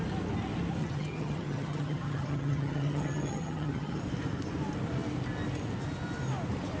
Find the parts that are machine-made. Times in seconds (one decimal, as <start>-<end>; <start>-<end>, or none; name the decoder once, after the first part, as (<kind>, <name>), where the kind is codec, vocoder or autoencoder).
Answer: 0.8-4.0 (vocoder, HiFi-GAN)